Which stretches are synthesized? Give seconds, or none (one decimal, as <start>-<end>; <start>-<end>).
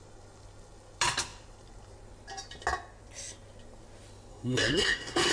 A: 4.3-5.3